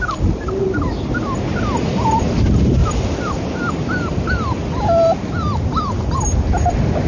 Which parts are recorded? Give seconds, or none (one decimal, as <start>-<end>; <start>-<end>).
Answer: 0.0-7.1